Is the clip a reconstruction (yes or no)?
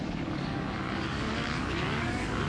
yes